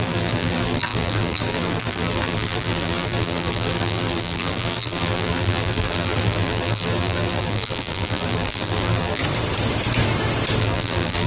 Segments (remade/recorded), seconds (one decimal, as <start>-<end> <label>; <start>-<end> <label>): 0.0-9.2 remade; 9.2-10.6 recorded; 10.6-11.3 remade